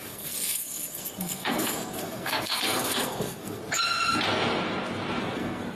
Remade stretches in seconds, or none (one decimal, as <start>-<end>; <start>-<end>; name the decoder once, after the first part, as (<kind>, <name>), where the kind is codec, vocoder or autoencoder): 0.0-3.6 (codec, SNAC); 5.2-5.8